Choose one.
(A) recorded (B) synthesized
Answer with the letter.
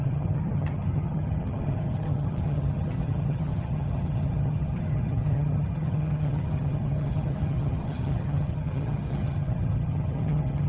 B